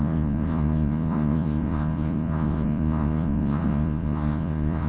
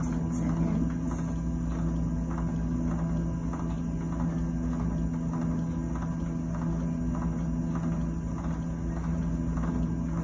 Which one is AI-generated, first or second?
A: first